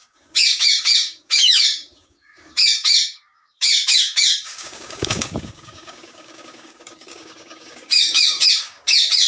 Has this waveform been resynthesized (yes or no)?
yes